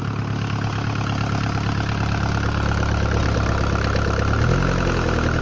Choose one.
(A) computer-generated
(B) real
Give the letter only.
B